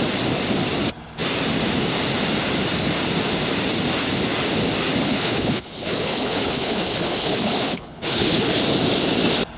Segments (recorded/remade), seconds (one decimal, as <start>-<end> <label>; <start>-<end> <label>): 0.0-5.0 recorded; 5.0-8.6 remade; 8.6-9.6 recorded

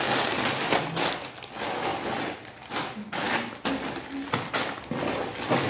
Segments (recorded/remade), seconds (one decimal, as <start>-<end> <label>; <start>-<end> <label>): 0.0-5.7 recorded

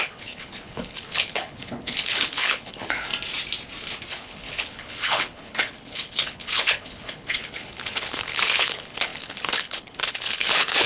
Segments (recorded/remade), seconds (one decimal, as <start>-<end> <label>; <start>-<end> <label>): 0.0-3.1 remade; 3.1-4.1 recorded; 4.1-10.9 remade

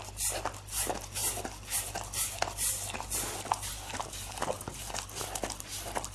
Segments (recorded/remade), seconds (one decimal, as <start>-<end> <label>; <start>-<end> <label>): 0.0-6.1 recorded

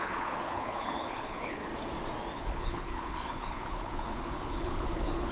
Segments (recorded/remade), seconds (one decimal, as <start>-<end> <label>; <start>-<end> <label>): 0.0-1.7 remade; 1.7-2.4 recorded; 2.4-5.3 remade

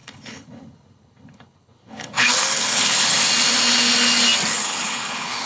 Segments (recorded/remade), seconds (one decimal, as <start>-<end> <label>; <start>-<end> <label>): 0.0-3.2 remade; 3.2-4.5 recorded; 4.5-5.5 remade

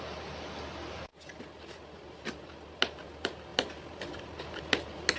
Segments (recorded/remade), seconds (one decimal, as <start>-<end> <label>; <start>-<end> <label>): 0.0-5.2 recorded

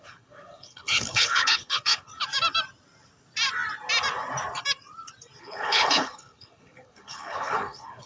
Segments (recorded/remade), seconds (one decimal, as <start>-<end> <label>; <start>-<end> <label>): 0.0-2.1 remade; 2.1-5.4 recorded; 5.4-8.1 remade